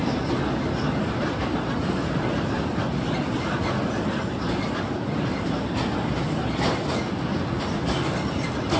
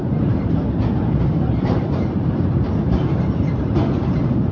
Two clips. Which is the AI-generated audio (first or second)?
second